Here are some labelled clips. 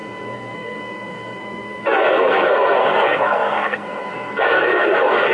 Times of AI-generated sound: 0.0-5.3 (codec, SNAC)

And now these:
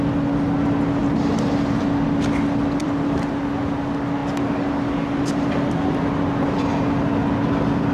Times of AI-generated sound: 1.0-1.8 (vocoder, BigVGAN v2); 2.8-3.4; 4.2-5.7